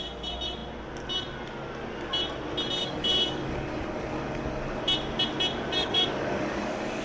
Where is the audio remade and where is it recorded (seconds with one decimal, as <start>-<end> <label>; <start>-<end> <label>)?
0.0-2.8 recorded; 2.8-4.8 remade; 4.8-5.8 recorded; 5.8-7.0 remade